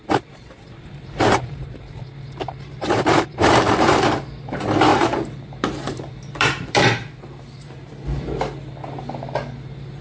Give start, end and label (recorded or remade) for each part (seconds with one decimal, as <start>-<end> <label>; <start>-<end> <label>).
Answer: 0.0-7.9 remade; 7.9-10.0 recorded